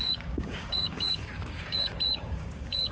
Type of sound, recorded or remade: remade